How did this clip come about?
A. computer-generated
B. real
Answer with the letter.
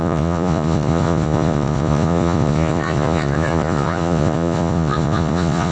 A